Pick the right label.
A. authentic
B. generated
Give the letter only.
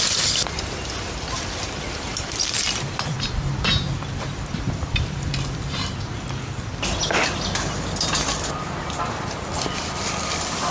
B